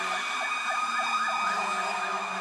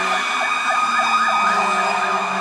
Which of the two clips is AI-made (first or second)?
first